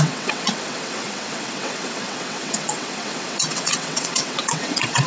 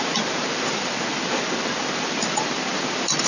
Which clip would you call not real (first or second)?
first